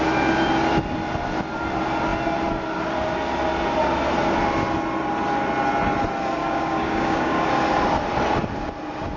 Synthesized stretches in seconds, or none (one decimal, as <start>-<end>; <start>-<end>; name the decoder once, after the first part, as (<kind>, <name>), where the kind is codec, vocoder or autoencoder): 6.4-7.5 (codec, DAC)